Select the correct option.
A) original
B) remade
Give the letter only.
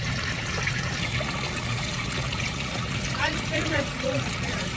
B